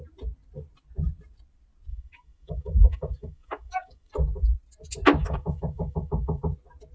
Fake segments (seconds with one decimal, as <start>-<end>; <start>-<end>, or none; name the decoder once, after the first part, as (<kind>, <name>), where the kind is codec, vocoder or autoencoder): 1.9-4.1 (autoencoder, DAC-VAE); 5.2-6.4